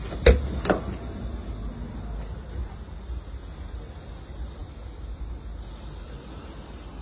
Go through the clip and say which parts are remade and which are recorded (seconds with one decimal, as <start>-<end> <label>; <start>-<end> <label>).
0.0-4.6 recorded; 4.6-5.3 remade; 5.3-7.0 recorded